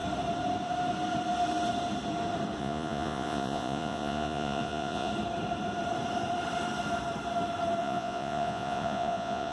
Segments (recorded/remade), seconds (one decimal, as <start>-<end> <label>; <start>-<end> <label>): 0.0-2.6 recorded; 2.6-5.1 remade; 5.1-7.8 recorded; 7.8-9.5 remade